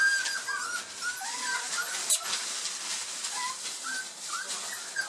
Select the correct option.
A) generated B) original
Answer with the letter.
B